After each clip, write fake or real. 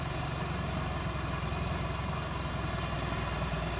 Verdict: real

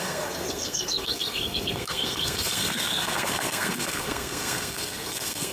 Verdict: fake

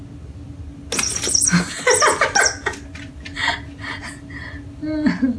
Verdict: real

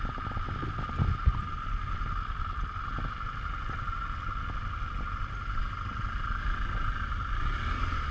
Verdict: real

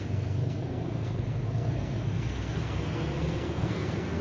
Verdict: fake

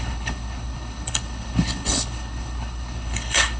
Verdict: fake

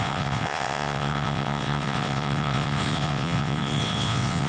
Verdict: fake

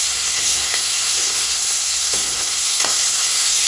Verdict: fake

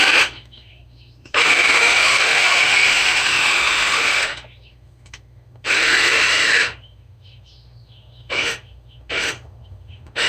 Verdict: fake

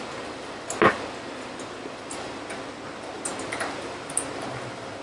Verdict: real